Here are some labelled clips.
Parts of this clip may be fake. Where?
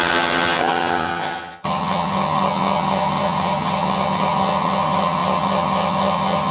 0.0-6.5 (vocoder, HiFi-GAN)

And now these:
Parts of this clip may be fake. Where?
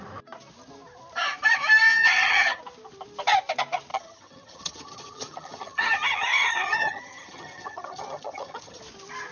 1.9-2.6 (vocoder, HiFi-GAN); 3.9-8.8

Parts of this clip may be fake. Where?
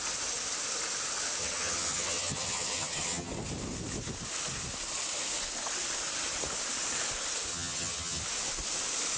1.4-3.3 (vocoder, HiFi-GAN); 7.5-8.2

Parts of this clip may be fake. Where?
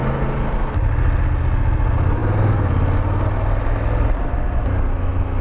none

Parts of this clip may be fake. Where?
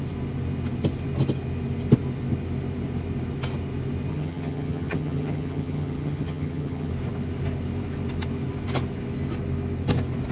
4.1-6.9 (vocoder, HiFi-GAN)